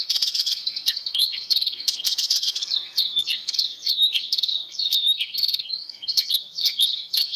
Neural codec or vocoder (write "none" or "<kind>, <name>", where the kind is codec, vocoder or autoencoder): codec, SNAC